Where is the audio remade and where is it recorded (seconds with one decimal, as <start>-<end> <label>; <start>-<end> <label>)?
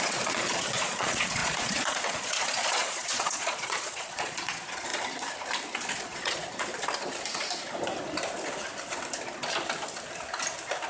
0.0-4.9 remade; 4.9-6.0 recorded; 6.0-6.7 remade; 6.7-10.9 recorded